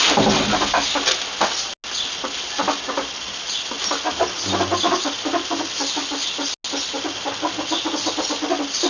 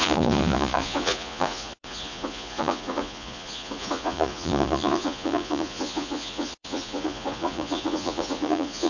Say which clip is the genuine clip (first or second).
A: first